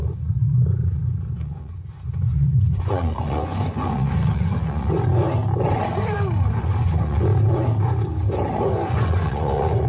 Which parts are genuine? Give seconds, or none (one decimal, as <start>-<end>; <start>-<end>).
5.4-6.6; 7.3-8.6

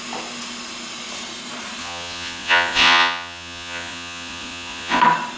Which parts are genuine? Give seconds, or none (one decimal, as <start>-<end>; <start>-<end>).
0.0-1.8; 5.0-5.4

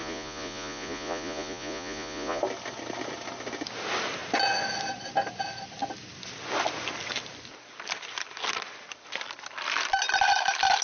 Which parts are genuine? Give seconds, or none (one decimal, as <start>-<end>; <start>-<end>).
2.4-10.8